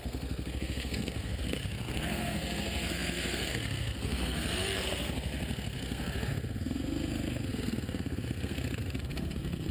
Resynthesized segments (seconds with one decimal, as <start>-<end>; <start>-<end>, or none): 0.0-9.7